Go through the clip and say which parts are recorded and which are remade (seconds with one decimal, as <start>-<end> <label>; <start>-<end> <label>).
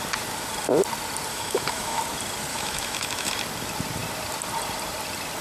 0.0-1.3 recorded; 1.3-2.0 remade; 2.0-2.5 recorded; 2.5-3.3 remade; 3.3-5.4 recorded